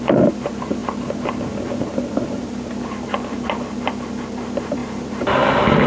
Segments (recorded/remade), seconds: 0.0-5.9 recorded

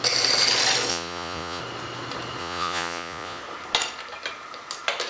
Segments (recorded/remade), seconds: 0.0-0.9 recorded; 0.9-1.6 remade; 1.6-2.4 recorded; 2.4-3.4 remade; 3.4-5.1 recorded